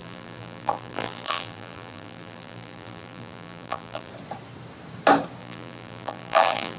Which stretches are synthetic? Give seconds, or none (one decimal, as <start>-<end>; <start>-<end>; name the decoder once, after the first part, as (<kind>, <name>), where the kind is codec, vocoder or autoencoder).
0.0-4.1 (vocoder, BigVGAN v2); 5.4-6.8

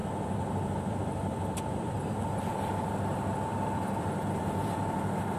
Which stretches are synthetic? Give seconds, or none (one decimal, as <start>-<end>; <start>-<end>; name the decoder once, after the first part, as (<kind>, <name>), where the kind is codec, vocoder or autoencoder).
3.1-5.4 (vocoder, BigVGAN v2)

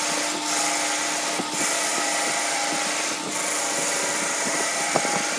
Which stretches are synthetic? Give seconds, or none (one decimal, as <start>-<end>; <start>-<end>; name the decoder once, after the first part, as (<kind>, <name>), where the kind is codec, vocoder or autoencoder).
1.9-5.4 (vocoder, BigVGAN v2)

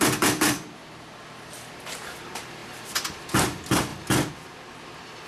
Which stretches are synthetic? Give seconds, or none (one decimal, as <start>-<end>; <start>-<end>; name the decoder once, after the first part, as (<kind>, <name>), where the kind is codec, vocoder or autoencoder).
0.0-3.9 (vocoder, BigVGAN v2); 4.7-5.3

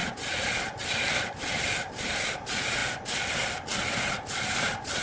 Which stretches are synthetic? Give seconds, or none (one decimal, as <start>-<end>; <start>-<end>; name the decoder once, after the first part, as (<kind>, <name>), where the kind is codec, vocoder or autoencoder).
1.2-2.8 (vocoder, BigVGAN v2); 4.0-5.0

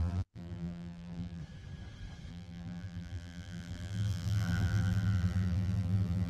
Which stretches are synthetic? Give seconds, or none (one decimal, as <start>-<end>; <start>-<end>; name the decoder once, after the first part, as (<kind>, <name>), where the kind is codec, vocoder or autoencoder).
0.0-1.4 (vocoder, BigVGAN v2); 2.3-6.3